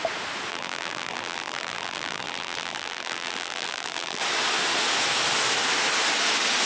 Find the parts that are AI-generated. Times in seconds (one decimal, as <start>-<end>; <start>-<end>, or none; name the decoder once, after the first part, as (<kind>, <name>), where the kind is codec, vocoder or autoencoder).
0.5-4.2 (vocoder, BigVGAN v2)